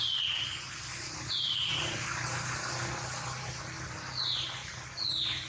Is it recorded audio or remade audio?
recorded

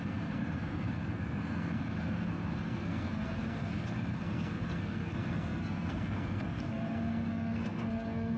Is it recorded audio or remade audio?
remade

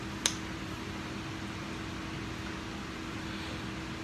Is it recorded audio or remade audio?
recorded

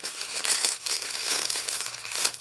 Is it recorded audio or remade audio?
remade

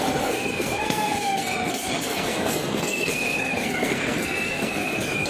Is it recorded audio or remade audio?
remade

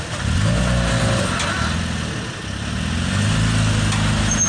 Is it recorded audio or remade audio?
recorded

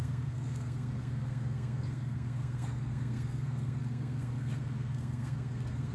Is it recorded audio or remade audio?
remade